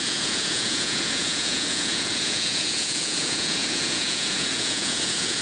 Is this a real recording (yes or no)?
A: no